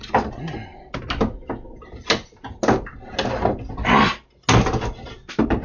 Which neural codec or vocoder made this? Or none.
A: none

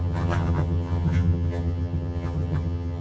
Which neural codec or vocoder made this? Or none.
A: vocoder, HiFi-GAN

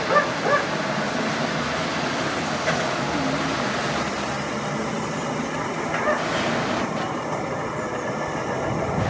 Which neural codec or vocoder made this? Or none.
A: none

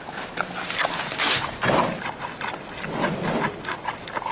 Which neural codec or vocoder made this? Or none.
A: none